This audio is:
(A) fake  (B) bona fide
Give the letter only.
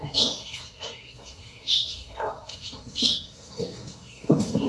A